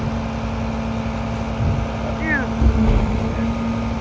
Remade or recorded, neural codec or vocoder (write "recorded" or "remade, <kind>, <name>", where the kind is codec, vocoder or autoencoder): recorded